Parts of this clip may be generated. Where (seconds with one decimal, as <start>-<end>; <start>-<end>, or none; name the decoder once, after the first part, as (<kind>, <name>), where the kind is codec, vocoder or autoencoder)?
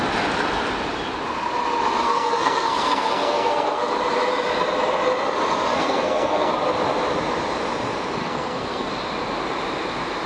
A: 2.0-3.9 (codec, SNAC); 5.7-6.5; 8.2-8.9